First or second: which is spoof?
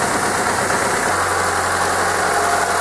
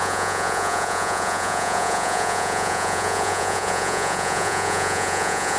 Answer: second